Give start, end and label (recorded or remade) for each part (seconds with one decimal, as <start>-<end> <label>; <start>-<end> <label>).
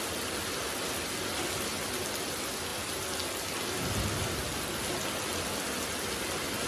0.0-6.7 recorded